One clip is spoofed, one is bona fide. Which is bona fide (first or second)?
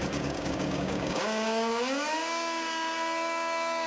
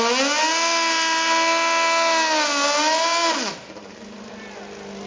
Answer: second